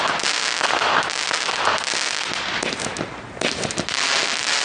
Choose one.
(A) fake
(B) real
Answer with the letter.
B